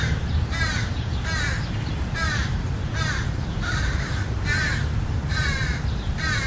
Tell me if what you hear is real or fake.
fake